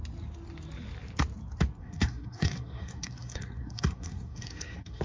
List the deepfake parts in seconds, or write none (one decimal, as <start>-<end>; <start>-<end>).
1.8-5.0